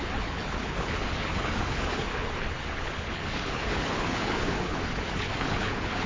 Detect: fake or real fake